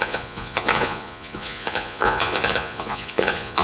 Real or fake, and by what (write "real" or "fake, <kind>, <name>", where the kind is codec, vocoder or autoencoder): fake, vocoder, Vocos